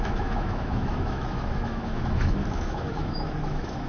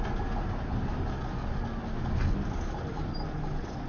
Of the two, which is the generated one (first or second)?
first